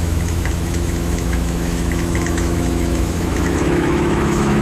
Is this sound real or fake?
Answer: fake